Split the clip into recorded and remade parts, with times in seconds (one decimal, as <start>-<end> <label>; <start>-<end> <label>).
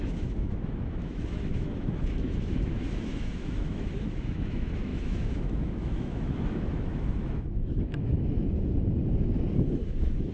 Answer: 0.0-8.4 remade; 8.4-9.7 recorded; 9.7-10.3 remade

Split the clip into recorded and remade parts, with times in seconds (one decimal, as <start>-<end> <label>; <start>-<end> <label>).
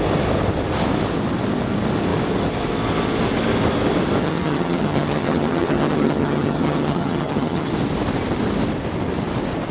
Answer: 0.0-4.2 recorded; 4.2-7.7 remade; 7.7-9.7 recorded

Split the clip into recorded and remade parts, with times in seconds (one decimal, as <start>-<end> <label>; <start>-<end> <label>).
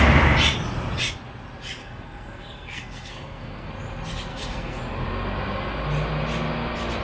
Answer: 0.0-1.8 recorded; 1.8-3.7 remade; 3.7-4.3 recorded; 4.3-4.8 remade; 4.8-7.0 recorded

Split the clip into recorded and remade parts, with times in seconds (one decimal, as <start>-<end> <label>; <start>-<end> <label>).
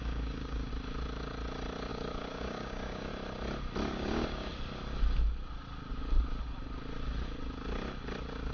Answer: 0.0-0.7 remade; 0.7-1.9 recorded; 1.9-3.1 remade; 3.1-3.9 recorded; 3.9-4.5 remade; 4.5-8.5 recorded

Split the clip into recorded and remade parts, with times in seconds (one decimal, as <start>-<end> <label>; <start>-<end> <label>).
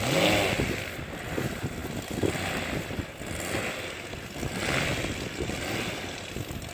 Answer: 0.0-6.7 recorded